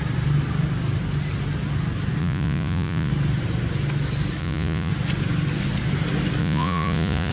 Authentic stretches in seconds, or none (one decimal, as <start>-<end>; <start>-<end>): 0.0-2.2; 3.1-4.4; 4.9-6.4

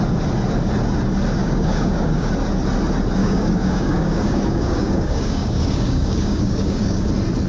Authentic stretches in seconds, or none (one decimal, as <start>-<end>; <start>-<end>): 0.0-1.4; 2.3-3.2; 7.1-7.5

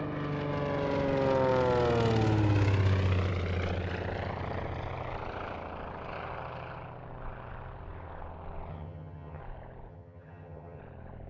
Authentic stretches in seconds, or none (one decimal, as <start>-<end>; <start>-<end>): 0.0-8.7; 9.4-9.9; 10.8-11.3

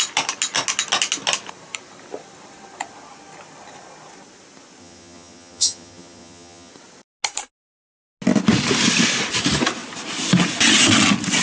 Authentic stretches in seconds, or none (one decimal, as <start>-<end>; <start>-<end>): 0.0-4.8; 6.7-11.4

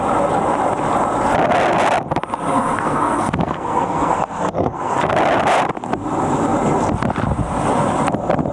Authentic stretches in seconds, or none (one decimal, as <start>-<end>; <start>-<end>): 0.0-2.5; 5.1-8.5

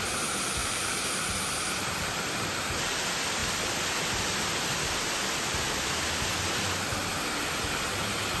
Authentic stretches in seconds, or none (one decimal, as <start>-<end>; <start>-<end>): 0.0-0.6; 3.0-8.4

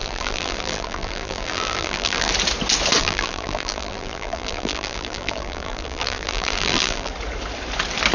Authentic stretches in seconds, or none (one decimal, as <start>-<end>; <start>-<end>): 2.3-3.0; 7.1-8.1